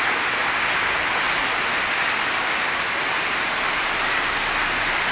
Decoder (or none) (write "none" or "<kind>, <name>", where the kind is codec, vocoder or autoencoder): none